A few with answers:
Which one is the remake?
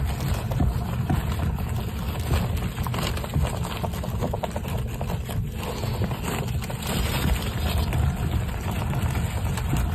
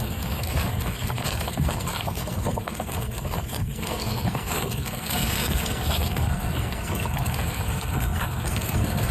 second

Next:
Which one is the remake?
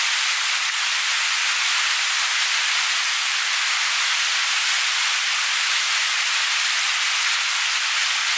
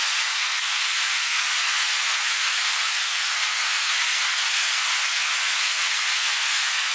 second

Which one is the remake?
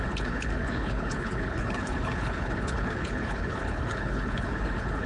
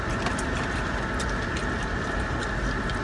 first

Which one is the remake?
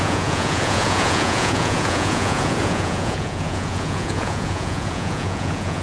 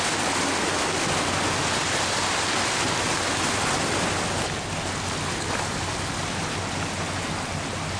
first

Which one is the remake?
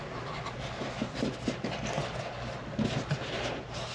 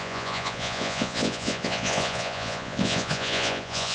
second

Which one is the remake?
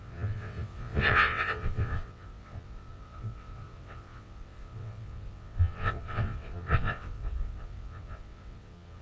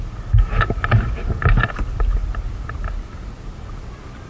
first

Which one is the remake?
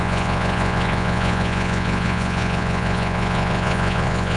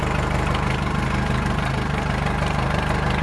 first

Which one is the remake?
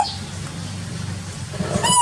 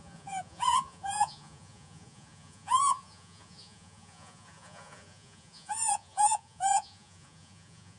second